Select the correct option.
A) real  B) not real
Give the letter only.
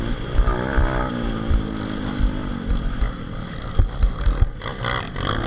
A